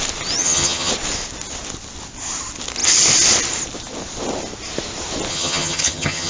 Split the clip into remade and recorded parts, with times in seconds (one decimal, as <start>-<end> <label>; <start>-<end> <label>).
0.0-0.4 recorded; 0.4-0.9 remade; 0.9-5.3 recorded; 5.3-6.3 remade